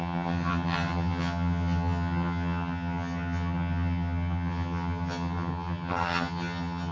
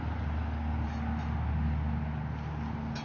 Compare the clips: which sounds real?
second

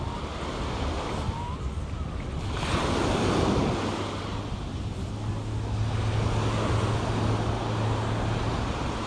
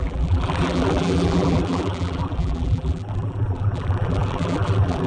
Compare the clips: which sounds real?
first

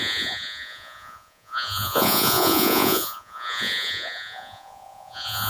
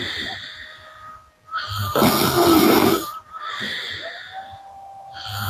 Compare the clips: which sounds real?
second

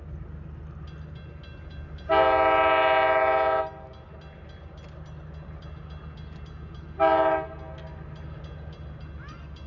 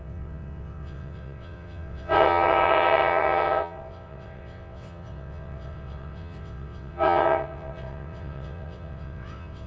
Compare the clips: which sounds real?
first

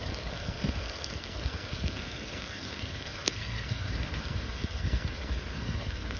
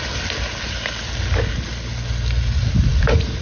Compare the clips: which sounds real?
second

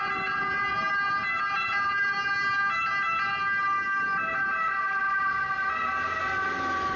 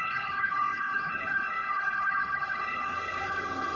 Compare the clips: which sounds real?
first